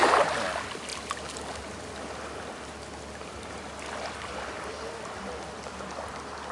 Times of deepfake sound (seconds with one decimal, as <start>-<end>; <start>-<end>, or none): none